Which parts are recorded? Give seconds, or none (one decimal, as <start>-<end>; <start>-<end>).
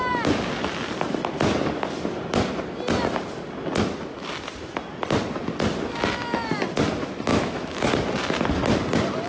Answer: 0.0-7.3; 7.9-9.3